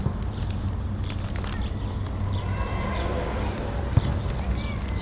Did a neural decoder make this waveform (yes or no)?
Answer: no